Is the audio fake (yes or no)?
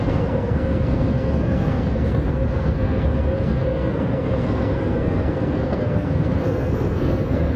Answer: yes